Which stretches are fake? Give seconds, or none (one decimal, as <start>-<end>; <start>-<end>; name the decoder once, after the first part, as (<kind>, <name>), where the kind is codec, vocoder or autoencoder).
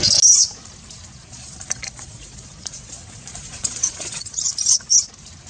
1.1-4.4 (vocoder, Vocos)